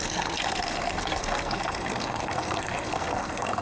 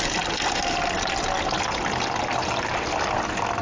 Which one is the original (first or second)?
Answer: second